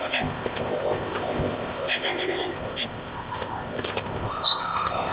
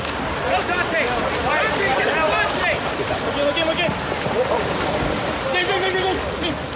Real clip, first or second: second